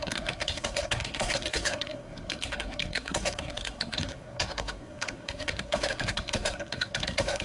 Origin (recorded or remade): remade